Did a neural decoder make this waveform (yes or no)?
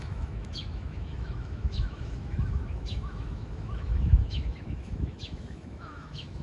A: yes